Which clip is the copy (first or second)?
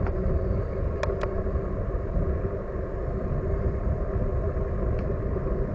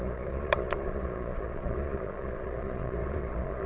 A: second